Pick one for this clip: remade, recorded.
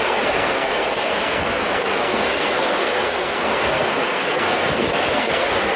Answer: remade